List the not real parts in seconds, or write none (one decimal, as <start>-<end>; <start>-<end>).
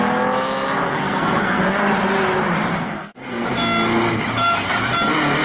0.9-1.6; 2.7-3.5